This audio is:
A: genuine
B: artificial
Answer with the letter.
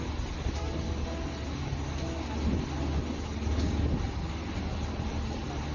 A